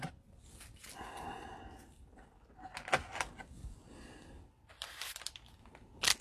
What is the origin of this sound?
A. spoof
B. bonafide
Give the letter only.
B